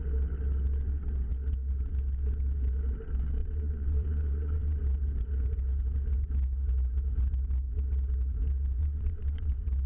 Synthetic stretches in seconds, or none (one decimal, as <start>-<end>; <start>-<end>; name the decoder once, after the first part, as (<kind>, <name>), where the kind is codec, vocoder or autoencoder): 3.4-4.8 (vocoder, WaveNeXt); 8.8-9.5